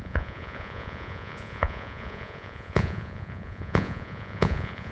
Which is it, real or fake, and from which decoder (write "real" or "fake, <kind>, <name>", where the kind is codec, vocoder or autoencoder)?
fake, vocoder, Vocos